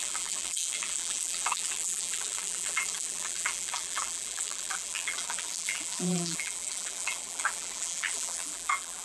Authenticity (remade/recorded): remade